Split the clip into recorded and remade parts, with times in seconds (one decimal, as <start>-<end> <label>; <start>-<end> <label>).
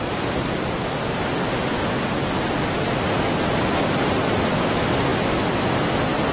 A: 0.0-1.8 recorded; 1.8-4.3 remade; 4.3-6.3 recorded